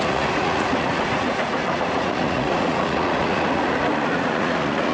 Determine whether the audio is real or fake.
fake